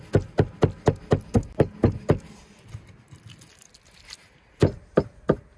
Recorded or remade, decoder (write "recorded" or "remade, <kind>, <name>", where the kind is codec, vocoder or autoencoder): recorded